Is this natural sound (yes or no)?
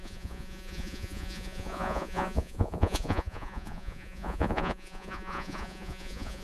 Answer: no